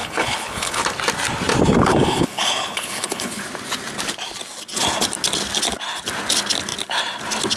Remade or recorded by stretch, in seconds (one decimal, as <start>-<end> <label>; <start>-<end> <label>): 0.0-0.8 remade; 0.8-1.9 recorded; 1.9-3.4 remade; 3.4-7.6 recorded